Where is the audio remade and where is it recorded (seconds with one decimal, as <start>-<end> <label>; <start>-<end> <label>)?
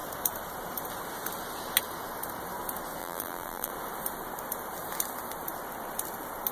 0.0-3.0 recorded; 3.0-3.7 remade; 3.7-6.5 recorded